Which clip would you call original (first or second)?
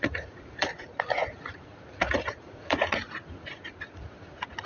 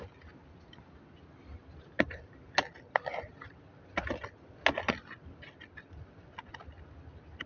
second